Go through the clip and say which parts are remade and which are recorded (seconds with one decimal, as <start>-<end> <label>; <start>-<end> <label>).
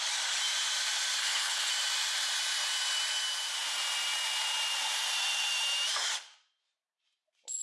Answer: 0.0-1.2 recorded; 1.2-1.7 remade; 1.7-7.6 recorded